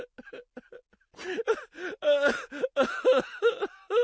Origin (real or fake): real